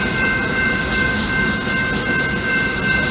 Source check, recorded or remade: recorded